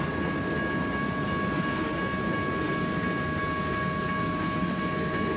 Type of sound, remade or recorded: recorded